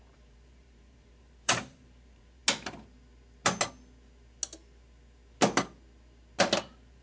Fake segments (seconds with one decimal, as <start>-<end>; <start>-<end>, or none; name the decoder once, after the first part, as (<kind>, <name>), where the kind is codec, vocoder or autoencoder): 0.0-2.4 (vocoder, BigVGAN v2); 6.6-7.0